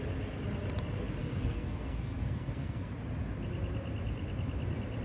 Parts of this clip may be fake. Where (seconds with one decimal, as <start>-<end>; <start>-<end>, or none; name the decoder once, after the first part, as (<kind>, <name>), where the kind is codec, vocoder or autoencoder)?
1.2-2.9 (codec, SNAC)